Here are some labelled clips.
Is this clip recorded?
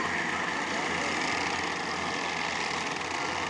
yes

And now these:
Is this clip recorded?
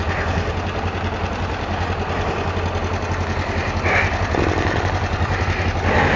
yes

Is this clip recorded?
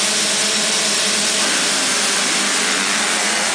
yes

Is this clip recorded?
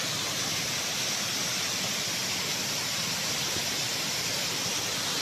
yes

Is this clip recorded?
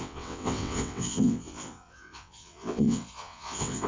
no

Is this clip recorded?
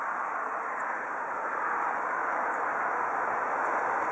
yes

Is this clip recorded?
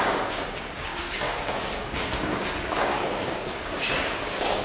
no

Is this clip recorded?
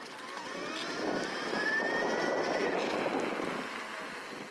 yes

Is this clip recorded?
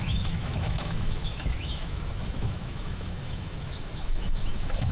no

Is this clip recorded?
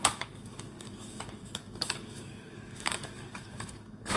no